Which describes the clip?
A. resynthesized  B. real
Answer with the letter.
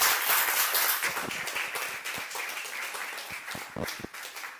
B